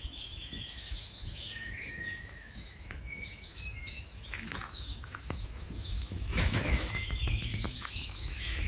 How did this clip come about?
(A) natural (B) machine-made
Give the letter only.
B